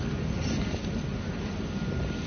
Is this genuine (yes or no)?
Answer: yes